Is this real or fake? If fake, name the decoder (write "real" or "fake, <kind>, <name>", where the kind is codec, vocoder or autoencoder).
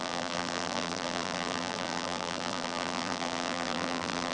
fake, vocoder, BigVGAN v2